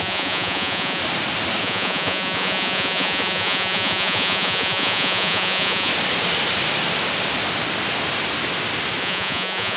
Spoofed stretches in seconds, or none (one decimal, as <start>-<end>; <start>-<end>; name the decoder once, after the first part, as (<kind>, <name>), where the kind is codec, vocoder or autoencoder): 0.0-1.0 (vocoder, Vocos); 1.6-5.9; 9.0-9.8